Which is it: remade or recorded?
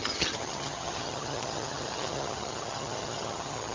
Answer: remade